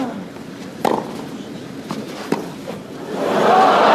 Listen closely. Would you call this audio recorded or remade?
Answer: recorded